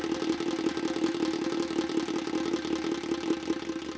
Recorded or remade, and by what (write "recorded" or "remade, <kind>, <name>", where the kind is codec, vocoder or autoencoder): recorded